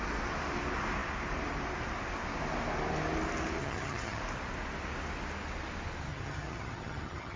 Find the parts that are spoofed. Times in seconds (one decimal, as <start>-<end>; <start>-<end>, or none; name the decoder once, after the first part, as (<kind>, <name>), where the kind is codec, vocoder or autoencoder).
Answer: 3.6-4.2 (vocoder, HiFi-GAN); 6.1-7.4